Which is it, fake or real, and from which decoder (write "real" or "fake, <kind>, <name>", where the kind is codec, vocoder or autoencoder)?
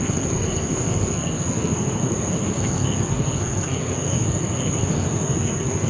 fake, codec, SNAC